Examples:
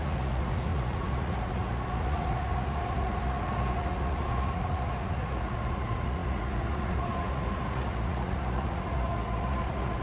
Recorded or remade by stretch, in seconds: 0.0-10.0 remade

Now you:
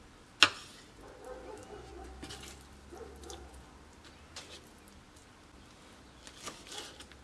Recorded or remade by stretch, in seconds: 0.0-7.2 recorded

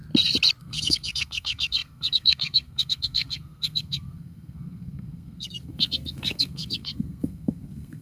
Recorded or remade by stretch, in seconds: 0.0-0.6 recorded; 0.6-8.0 remade

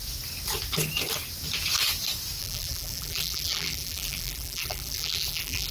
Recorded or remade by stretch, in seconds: 0.0-2.4 recorded; 2.4-5.7 remade

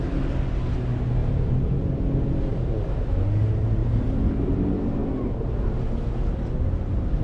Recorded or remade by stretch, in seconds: 0.0-1.2 recorded; 1.2-1.8 remade; 1.8-3.8 recorded; 3.8-4.4 remade; 4.4-7.2 recorded

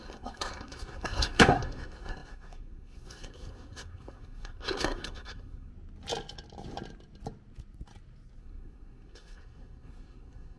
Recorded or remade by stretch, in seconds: 0.0-5.7 remade; 5.7-8.4 recorded; 8.4-10.6 remade

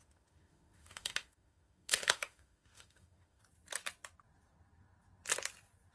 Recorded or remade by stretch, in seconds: 0.0-3.4 remade; 3.4-5.9 recorded

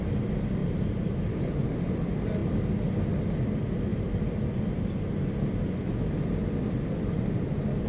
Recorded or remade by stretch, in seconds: 0.0-0.6 recorded; 0.6-1.9 remade; 1.9-7.9 recorded